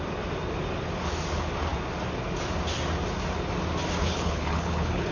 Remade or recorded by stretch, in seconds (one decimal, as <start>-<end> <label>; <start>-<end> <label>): 0.0-4.0 recorded; 4.0-5.1 remade